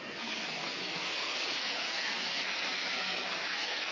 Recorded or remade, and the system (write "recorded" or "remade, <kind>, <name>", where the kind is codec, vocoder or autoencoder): remade, codec, SNAC